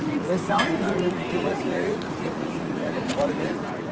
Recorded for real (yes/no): no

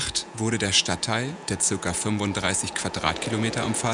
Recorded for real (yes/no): no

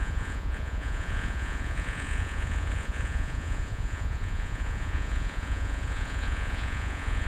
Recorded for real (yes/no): no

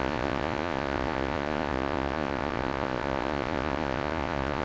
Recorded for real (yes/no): no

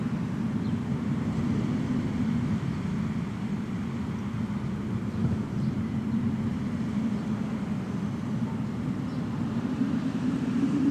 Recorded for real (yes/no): yes